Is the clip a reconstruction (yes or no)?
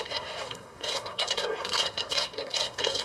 yes